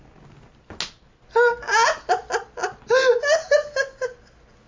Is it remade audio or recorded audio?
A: recorded